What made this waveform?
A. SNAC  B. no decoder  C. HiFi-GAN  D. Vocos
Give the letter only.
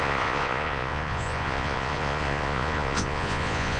D